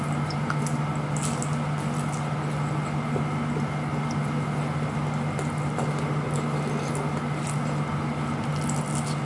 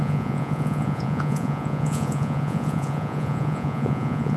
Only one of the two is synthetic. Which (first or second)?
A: second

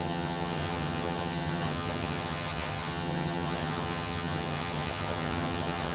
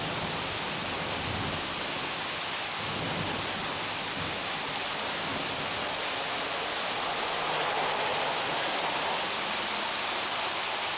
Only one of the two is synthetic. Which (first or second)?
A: first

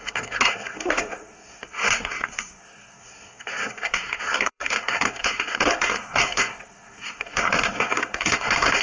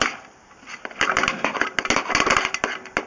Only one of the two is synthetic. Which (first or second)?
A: first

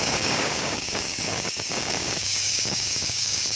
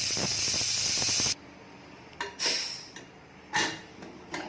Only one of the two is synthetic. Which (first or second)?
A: first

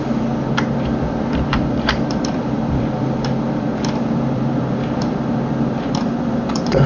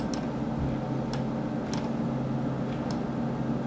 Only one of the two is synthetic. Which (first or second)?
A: first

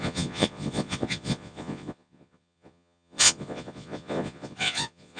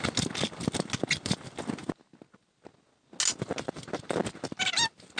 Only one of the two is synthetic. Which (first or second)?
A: first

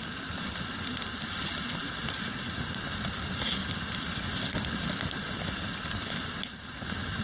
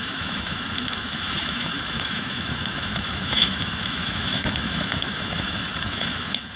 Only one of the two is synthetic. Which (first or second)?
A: second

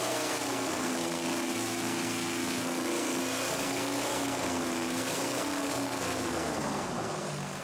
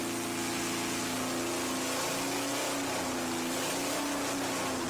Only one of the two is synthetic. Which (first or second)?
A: first